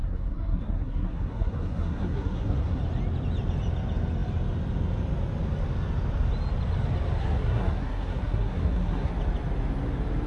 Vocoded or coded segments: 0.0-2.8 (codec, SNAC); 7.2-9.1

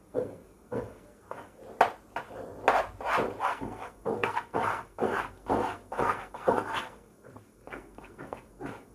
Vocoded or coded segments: 0.0-1.6 (codec, SNAC); 3.4-8.9

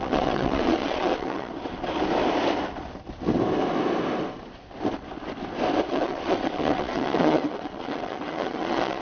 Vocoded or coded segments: 0.0-1.5 (vocoder, WaveNeXt); 5.9-9.0

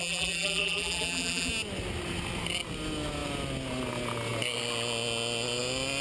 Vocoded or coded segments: 0.0-1.5 (vocoder, BigVGAN v2)

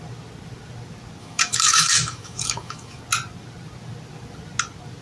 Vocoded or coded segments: 1.2-3.0 (autoencoder, DAC-VAE)

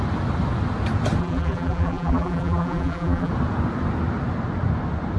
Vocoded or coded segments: 1.2-3.3 (vocoder, BigVGAN v2)

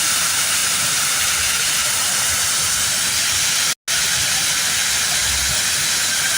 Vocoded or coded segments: 0.6-2.5 (vocoder, BigVGAN v2)